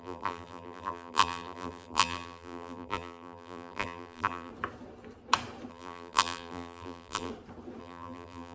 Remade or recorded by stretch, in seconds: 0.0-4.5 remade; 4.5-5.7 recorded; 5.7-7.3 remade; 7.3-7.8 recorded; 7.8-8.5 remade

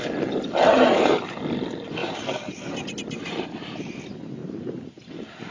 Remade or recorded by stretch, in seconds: 0.0-0.7 recorded; 0.7-1.3 remade; 1.3-2.0 recorded; 2.0-3.9 remade; 3.9-4.4 recorded; 4.4-5.5 remade